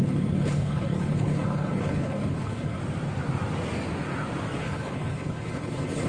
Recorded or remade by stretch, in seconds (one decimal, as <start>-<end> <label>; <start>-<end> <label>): 0.0-2.8 remade; 2.8-4.6 recorded; 4.6-6.1 remade